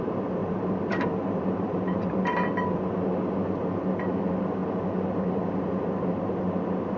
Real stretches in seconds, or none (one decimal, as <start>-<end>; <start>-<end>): 0.0-0.4; 2.8-7.0